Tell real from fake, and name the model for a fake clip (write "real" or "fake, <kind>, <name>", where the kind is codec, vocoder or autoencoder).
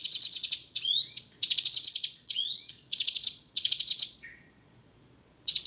fake, vocoder, Vocos